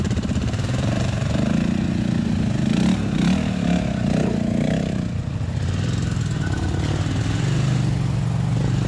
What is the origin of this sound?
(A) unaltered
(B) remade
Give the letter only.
A